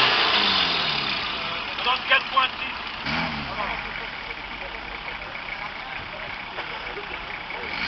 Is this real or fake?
real